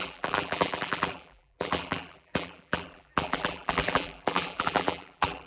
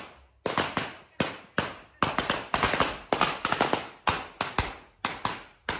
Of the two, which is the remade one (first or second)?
first